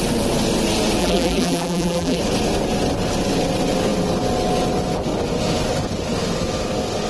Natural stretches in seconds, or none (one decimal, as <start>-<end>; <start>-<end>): 0.0-1.0; 2.2-7.1